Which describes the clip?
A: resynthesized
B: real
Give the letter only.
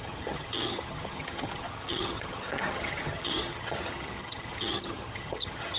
A